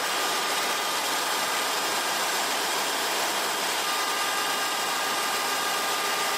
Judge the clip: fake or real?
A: real